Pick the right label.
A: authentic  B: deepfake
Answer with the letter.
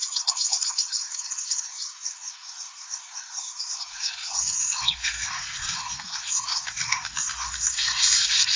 B